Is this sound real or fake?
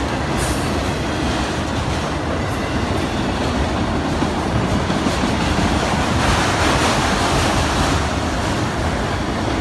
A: real